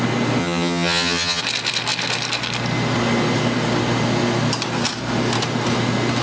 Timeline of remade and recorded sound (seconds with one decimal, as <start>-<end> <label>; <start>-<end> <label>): 0.0-0.4 recorded; 0.4-1.4 remade; 1.4-6.2 recorded